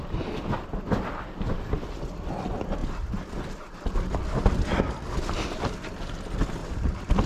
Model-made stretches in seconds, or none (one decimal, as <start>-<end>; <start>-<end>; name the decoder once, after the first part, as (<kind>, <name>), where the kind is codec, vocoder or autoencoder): none